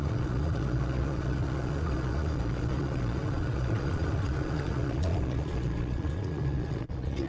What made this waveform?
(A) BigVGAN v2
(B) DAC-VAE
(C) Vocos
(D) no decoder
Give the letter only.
C